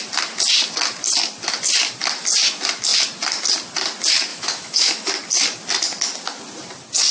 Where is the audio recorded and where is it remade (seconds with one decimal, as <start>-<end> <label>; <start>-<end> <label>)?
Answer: 0.0-4.3 recorded; 4.3-5.1 remade; 5.1-7.1 recorded